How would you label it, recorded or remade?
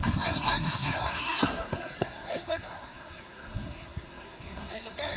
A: remade